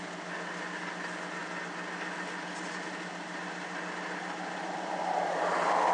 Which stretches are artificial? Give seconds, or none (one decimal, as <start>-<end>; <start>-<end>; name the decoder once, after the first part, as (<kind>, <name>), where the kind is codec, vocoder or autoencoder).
none

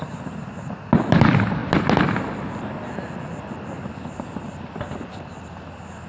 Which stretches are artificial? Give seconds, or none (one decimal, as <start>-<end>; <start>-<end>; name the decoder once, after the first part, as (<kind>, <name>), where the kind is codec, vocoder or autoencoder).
0.0-1.6 (vocoder, BigVGAN v2); 4.0-6.1

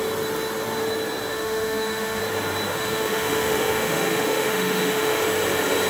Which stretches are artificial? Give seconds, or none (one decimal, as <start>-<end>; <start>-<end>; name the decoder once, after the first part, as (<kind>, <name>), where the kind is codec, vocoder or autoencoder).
1.3-2.2 (autoencoder, DAC-VAE); 2.7-5.2

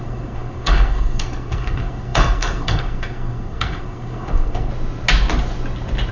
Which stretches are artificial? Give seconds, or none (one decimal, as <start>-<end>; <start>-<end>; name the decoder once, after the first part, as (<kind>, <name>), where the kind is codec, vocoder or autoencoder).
0.0-4.7 (codec, SNAC)

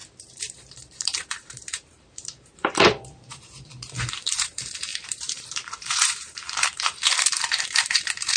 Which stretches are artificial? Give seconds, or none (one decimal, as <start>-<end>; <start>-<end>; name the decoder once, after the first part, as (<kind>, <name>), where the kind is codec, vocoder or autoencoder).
0.0-8.4 (vocoder, BigVGAN v2)

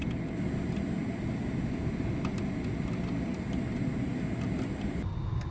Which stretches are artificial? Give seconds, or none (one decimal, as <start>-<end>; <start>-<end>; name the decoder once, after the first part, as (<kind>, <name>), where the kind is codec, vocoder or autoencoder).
none

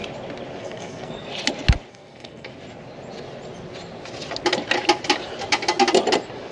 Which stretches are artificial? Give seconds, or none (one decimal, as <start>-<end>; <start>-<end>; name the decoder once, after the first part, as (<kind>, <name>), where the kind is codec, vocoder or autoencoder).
0.6-1.3 (codec, SNAC); 1.9-2.5